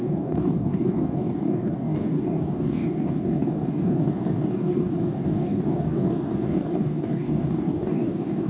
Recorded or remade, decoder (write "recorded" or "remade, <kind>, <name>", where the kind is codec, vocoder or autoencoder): remade, codec, DAC